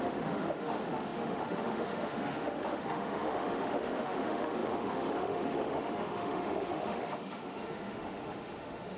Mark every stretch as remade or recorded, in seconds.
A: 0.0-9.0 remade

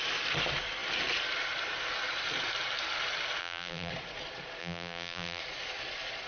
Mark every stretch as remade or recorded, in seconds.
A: 0.0-3.4 recorded; 3.4-3.9 remade; 3.9-4.6 recorded; 4.6-5.4 remade; 5.4-6.3 recorded

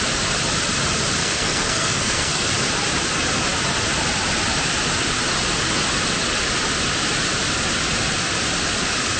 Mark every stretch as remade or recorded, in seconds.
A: 0.0-1.2 recorded; 1.2-2.5 remade; 2.5-9.2 recorded